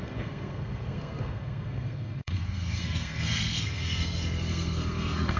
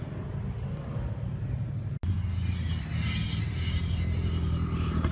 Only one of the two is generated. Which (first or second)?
first